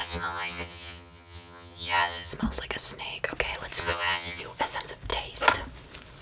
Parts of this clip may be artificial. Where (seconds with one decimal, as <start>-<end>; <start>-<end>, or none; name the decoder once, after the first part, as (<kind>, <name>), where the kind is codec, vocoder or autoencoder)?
0.0-2.3 (vocoder, HiFi-GAN); 3.8-4.4